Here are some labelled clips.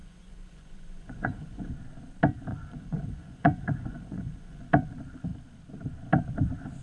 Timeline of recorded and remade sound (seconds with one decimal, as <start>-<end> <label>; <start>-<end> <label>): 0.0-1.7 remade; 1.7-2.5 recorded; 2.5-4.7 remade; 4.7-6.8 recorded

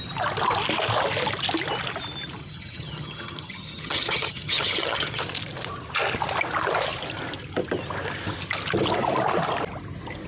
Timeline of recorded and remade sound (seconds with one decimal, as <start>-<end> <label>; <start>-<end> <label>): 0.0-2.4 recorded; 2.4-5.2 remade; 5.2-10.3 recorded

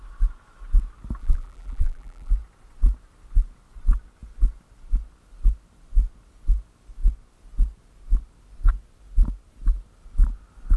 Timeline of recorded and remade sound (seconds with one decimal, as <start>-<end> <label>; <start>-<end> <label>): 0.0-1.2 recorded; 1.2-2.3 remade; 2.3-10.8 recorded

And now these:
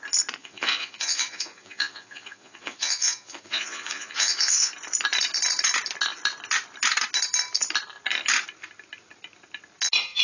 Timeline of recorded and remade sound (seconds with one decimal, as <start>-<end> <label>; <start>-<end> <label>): 0.0-0.4 recorded; 0.4-4.7 remade; 4.7-10.2 recorded